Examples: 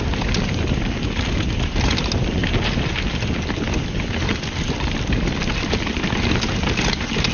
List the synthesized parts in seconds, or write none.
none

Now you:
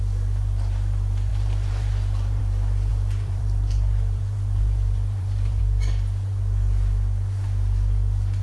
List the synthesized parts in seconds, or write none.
1.3-2.4 (vocoder, BigVGAN v2); 2.9-5.6

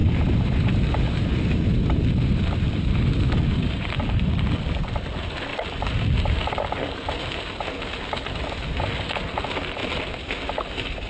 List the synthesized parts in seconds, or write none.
0.0-4.9 (vocoder, BigVGAN v2); 9.8-10.4

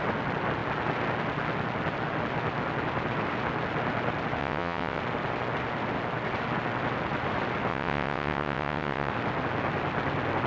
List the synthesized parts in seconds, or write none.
4.4-5.0 (vocoder, WaveNeXt); 7.7-9.1

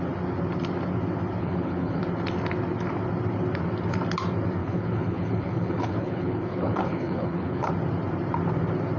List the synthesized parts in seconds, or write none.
1.4-2.0 (codec, HILCodec); 4.6-7.7

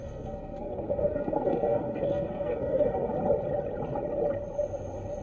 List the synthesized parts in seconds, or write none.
0.0-3.1 (codec, SNAC)

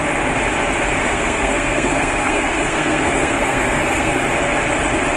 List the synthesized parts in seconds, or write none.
1.0-4.1 (codec, SNAC)